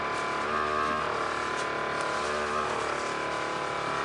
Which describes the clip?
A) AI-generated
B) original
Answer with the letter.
B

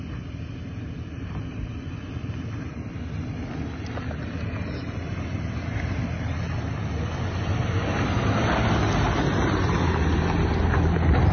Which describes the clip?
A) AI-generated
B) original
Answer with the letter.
B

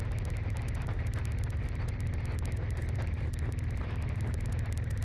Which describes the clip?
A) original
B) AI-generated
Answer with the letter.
A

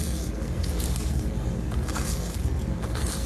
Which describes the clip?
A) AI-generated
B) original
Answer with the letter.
A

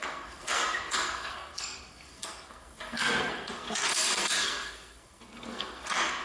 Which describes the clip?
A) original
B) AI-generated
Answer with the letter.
B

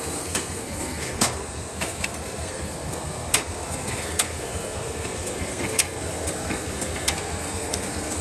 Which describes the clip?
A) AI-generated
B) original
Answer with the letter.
A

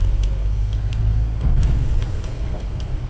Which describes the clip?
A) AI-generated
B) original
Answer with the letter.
A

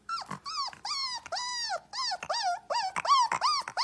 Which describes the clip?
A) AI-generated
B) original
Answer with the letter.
B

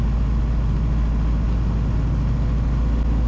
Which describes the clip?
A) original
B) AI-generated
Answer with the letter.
A